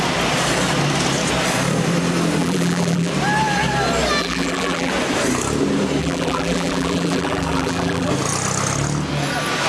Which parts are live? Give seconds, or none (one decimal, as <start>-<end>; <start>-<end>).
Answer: 0.0-2.4; 3.1-4.2; 4.9-6.0; 8.1-9.7